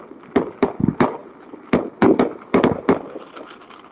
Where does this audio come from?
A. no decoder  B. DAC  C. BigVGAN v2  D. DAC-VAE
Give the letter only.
A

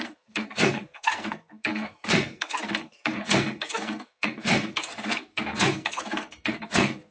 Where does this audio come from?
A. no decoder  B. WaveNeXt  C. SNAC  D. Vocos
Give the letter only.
C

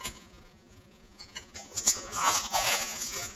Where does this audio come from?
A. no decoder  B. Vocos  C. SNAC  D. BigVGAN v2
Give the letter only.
B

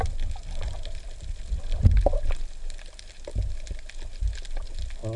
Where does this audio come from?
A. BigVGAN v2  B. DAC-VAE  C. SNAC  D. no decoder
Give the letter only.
D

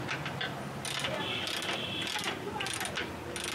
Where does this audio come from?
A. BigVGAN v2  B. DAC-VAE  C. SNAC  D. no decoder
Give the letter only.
D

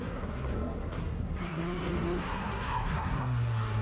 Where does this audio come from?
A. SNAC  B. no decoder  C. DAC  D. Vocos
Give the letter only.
A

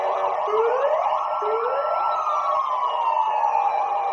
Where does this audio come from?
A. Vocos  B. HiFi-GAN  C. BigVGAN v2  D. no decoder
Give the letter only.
D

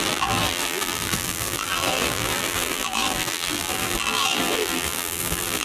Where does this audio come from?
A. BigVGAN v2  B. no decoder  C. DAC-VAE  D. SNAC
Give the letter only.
A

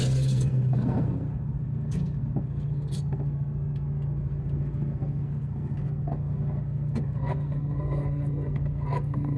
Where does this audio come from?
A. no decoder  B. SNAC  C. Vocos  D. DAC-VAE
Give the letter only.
B